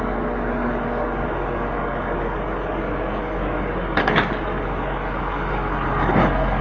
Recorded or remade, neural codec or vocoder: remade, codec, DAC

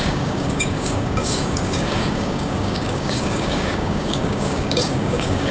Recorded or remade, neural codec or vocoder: remade, codec, DAC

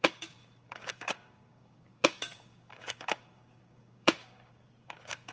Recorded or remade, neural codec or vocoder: remade, codec, DAC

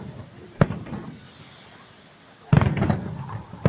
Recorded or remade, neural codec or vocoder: recorded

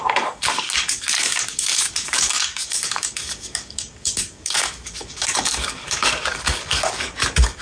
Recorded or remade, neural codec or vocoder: remade, codec, DAC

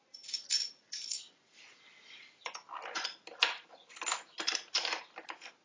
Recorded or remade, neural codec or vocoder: recorded